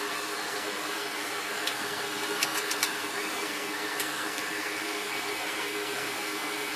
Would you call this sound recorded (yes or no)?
no